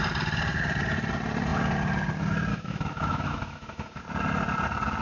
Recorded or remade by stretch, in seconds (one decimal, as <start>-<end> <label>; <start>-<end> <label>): 0.0-2.5 recorded; 2.5-4.0 remade; 4.0-5.0 recorded